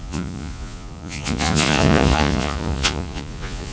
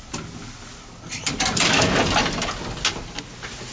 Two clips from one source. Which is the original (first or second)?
second